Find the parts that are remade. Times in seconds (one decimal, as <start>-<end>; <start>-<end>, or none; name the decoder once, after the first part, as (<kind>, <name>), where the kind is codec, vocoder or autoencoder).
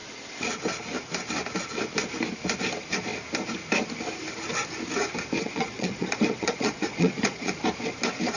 5.4-7.5 (vocoder, Vocos)